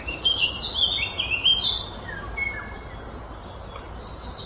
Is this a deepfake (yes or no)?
no